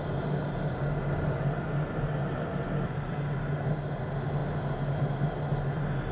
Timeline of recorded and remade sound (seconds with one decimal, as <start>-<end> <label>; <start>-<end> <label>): 0.0-6.1 recorded